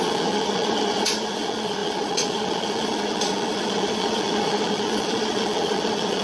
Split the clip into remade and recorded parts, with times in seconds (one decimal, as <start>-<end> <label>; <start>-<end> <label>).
0.0-6.2 remade